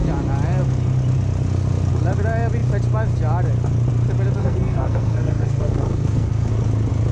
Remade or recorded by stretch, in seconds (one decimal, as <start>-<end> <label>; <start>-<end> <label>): 0.0-4.4 recorded; 4.4-6.5 remade; 6.5-7.1 recorded